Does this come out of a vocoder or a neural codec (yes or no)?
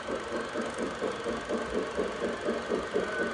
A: no